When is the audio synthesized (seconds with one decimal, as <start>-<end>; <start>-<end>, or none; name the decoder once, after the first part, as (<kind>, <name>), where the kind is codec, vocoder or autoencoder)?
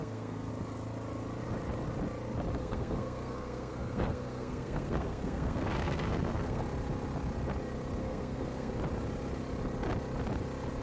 0.0-0.5 (codec, SNAC); 2.6-6.6; 8.0-8.7